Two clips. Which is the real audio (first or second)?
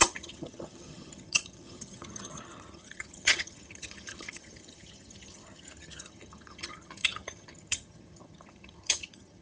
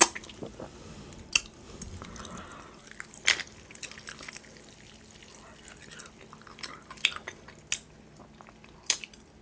second